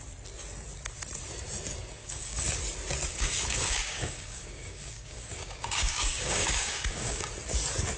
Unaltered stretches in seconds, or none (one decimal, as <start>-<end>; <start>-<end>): 0.0-2.0; 2.6-3.1; 7.3-8.0